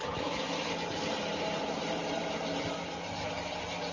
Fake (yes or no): no